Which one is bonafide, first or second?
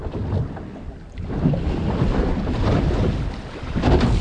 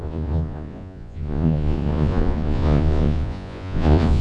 first